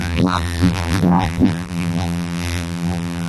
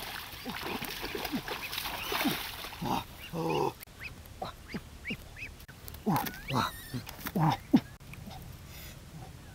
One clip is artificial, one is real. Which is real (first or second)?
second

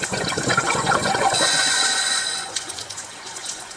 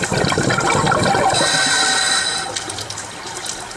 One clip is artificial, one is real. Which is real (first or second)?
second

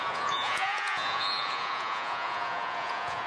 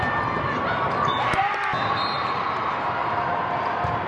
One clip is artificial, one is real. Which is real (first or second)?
second